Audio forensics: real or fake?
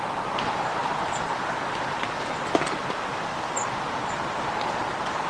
real